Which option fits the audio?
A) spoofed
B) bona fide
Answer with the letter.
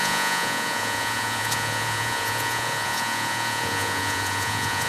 A